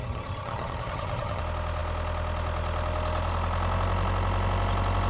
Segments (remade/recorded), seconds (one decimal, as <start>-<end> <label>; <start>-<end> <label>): 0.0-1.4 remade; 1.4-5.1 recorded